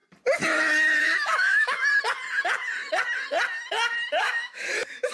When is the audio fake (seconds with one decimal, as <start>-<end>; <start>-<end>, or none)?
1.0-1.8; 4.2-5.1